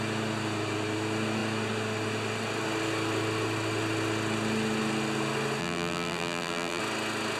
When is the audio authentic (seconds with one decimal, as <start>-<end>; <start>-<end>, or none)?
0.0-5.6; 6.8-7.4

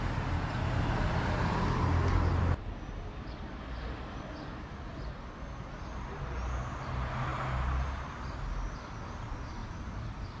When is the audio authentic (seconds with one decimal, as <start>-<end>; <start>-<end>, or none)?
0.0-2.3; 4.9-9.6

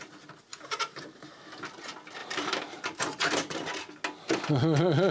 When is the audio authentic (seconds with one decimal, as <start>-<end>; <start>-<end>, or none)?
0.0-0.5; 1.5-2.2; 3.6-5.1

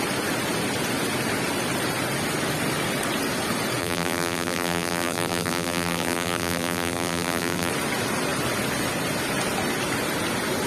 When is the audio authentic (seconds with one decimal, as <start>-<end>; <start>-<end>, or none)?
0.0-3.8; 7.7-10.7